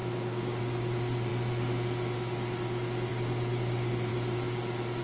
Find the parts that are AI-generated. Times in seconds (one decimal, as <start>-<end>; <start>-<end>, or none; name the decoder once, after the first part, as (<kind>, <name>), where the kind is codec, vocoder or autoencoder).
0.0-0.6 (codec, DAC)